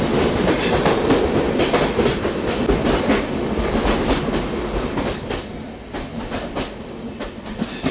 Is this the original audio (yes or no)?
yes